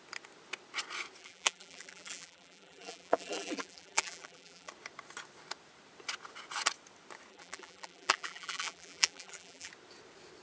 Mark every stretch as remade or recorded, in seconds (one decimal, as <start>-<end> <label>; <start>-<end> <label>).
0.0-1.2 recorded; 1.2-4.7 remade; 4.7-7.3 recorded; 7.3-9.7 remade; 9.7-10.4 recorded